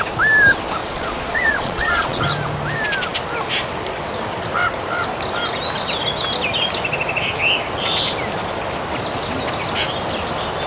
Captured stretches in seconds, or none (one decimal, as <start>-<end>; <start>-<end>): 0.0-0.8; 2.2-10.7